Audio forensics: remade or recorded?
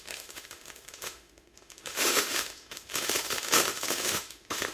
remade